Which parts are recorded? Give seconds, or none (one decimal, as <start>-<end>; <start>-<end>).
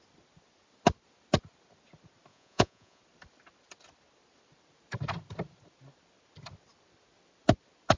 0.0-2.3; 3.0-8.0